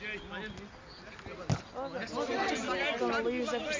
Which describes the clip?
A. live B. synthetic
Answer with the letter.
A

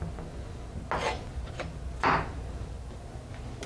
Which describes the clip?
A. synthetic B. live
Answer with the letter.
B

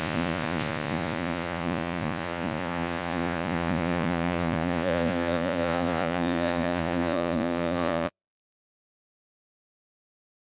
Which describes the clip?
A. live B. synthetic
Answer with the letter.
B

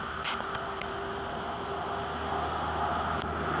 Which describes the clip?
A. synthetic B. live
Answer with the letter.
B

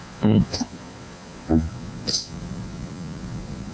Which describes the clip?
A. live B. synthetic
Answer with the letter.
B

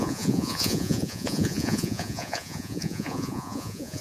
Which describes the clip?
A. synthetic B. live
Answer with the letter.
A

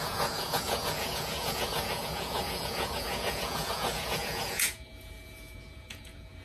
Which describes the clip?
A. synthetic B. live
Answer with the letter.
A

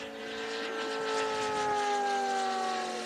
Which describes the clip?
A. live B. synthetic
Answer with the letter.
A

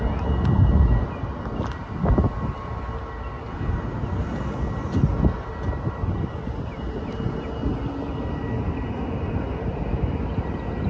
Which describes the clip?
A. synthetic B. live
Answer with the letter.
B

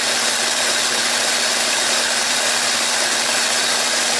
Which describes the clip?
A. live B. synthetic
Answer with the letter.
A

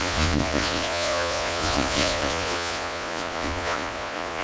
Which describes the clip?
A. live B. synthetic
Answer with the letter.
B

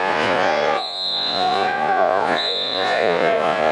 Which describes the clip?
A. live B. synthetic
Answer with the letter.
B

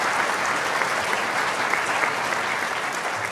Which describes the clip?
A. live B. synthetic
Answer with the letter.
A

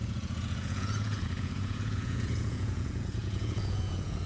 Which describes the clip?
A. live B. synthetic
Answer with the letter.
B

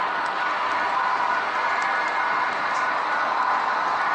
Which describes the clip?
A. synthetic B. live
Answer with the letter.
B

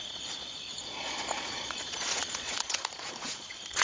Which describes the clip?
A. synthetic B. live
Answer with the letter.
A